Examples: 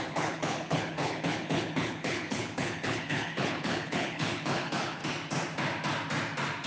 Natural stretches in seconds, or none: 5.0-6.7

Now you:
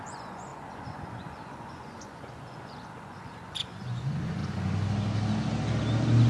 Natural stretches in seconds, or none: 4.4-6.3